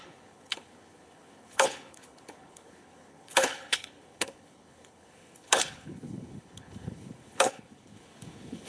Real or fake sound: fake